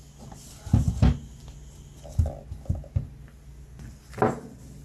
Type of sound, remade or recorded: recorded